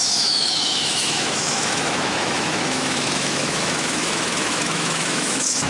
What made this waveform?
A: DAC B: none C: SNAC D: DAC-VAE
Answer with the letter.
D